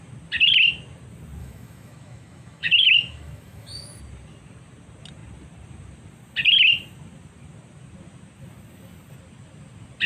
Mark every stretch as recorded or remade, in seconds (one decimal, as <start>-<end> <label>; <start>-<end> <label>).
0.0-1.4 recorded; 1.4-4.0 remade; 4.0-10.1 recorded